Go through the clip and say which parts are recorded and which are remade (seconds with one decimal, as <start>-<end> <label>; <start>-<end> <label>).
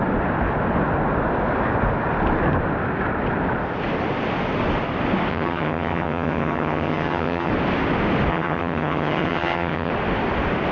0.0-5.3 recorded; 5.3-7.5 remade; 7.5-8.3 recorded; 8.3-9.9 remade; 9.9-10.7 recorded